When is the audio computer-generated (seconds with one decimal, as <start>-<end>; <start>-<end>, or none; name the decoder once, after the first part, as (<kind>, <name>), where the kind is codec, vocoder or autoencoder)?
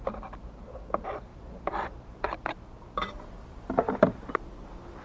1.3-4.3 (vocoder, BigVGAN v2)